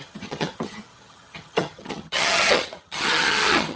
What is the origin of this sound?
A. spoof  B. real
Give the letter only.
A